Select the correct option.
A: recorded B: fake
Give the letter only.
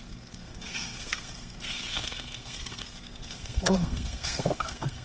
B